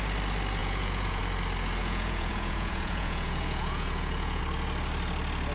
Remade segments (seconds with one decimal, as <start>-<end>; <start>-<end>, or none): 0.6-1.2; 1.8-4.4